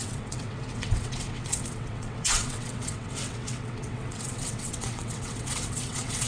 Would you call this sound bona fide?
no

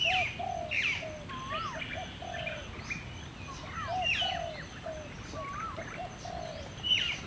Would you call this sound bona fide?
yes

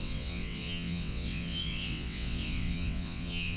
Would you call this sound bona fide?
no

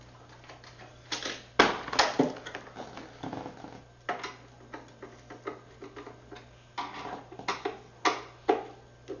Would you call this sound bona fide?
yes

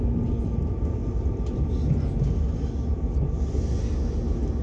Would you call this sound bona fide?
yes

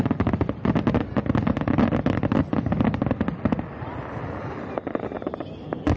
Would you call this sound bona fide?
yes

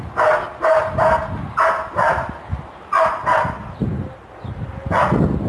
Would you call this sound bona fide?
yes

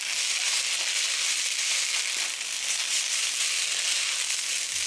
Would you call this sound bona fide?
yes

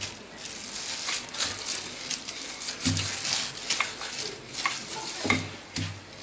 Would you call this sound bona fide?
yes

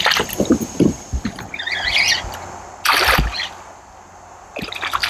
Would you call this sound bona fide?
yes